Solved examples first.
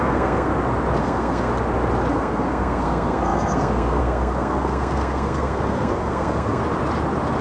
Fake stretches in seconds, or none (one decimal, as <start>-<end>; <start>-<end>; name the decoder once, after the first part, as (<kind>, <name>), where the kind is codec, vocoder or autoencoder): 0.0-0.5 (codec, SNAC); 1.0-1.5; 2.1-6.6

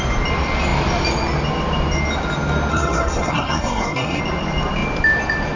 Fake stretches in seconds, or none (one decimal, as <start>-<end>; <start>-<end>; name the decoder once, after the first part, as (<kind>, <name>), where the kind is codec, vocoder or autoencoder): 2.7-4.2 (codec, SNAC)

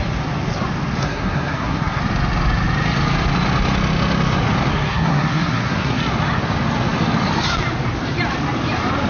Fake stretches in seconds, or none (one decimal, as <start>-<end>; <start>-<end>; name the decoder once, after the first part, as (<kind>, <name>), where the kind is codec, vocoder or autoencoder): 1.0-2.0 (codec, SNAC); 4.7-6.0

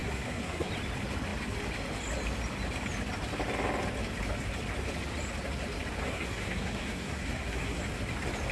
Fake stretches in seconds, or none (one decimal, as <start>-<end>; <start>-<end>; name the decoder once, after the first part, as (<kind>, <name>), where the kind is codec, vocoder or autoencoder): 0.0-0.7 (codec, SNAC); 6.0-7.8